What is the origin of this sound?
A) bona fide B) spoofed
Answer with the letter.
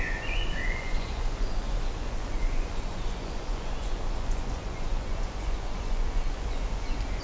B